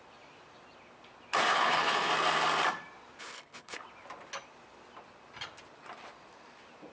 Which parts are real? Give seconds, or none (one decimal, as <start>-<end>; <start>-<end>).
0.0-1.5; 2.1-3.2; 3.8-6.9